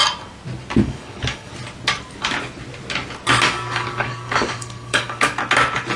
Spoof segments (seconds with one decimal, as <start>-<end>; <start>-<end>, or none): 0.8-1.5; 3.5-5.4